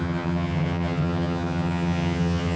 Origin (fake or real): fake